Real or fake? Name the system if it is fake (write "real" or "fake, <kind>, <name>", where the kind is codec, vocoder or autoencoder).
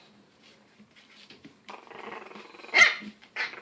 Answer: fake, vocoder, BigVGAN v2